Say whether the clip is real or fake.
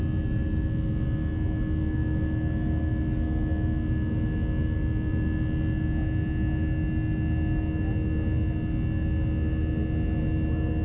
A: real